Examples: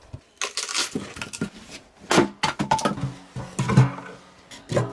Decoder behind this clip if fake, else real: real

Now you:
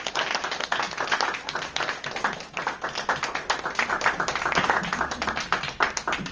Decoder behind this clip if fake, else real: real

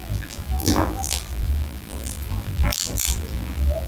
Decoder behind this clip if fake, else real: fake, vocoder, BigVGAN v2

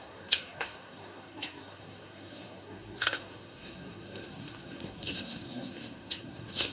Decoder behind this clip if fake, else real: fake, codec, SNAC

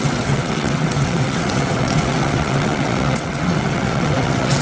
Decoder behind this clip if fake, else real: fake, vocoder, WaveNeXt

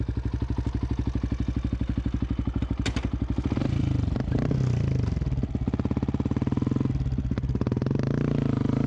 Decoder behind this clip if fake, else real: real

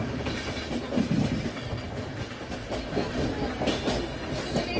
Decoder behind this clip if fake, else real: real